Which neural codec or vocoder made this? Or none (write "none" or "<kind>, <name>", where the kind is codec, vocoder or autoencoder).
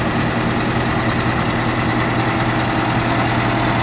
none